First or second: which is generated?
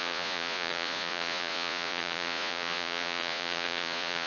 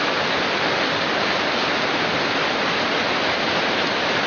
first